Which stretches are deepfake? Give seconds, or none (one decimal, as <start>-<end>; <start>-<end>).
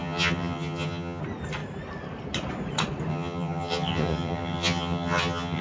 0.0-1.2; 3.1-5.6